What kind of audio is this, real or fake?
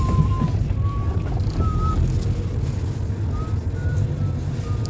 real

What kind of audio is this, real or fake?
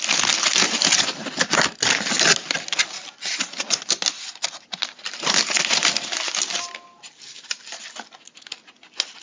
real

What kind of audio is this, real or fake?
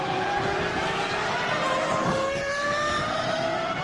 fake